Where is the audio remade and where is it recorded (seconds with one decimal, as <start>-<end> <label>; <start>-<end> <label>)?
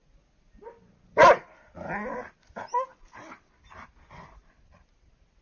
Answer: 0.0-5.4 recorded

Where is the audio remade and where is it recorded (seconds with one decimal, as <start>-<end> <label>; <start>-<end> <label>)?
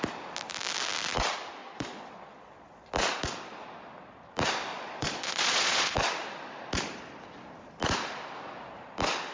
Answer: 0.0-1.6 recorded; 1.6-2.9 remade; 2.9-4.7 recorded; 4.7-5.9 remade; 5.9-9.3 recorded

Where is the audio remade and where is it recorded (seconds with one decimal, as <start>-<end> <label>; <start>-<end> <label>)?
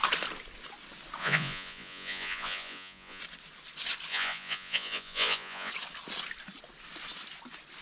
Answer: 0.0-1.2 recorded; 1.2-3.2 remade; 3.2-4.1 recorded; 4.1-5.7 remade; 5.7-7.8 recorded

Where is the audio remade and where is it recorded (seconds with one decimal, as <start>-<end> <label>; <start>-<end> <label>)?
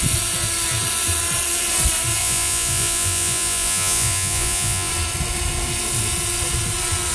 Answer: 0.0-2.2 recorded; 2.2-4.9 remade; 4.9-7.1 recorded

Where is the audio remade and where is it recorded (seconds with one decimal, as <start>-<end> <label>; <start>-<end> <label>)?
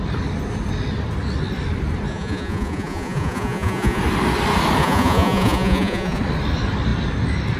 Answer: 0.0-2.1 recorded; 2.1-4.0 remade; 4.0-4.8 recorded; 4.8-6.2 remade; 6.2-7.6 recorded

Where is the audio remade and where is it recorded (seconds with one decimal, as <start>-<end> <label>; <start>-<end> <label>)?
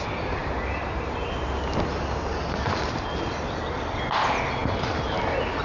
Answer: 0.0-5.6 recorded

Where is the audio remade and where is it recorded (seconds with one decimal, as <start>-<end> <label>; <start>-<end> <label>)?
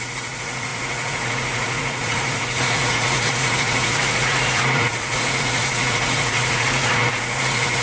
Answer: 0.0-7.8 remade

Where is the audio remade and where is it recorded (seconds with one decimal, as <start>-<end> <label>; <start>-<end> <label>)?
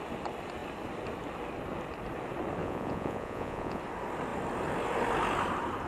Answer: 0.0-2.6 recorded; 2.6-3.8 remade; 3.8-5.9 recorded